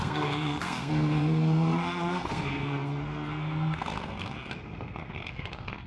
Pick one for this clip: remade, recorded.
remade